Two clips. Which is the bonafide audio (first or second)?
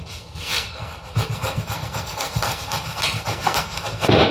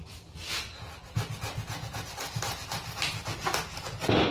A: second